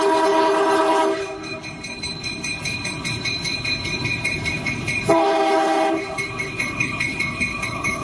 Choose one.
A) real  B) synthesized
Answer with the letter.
B